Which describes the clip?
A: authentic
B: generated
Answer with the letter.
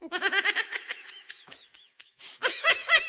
B